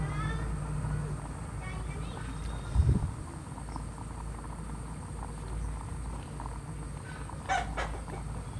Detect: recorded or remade recorded